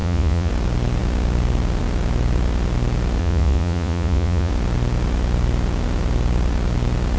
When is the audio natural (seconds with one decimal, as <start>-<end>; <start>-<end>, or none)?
0.5-3.2; 4.5-7.2